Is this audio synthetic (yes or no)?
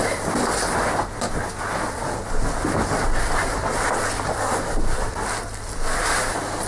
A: yes